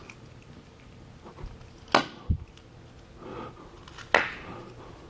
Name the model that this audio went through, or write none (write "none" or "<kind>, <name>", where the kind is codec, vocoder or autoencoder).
none